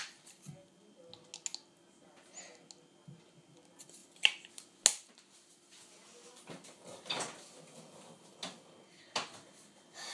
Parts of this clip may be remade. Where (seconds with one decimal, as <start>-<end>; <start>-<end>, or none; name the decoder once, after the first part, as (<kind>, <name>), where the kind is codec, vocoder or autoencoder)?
none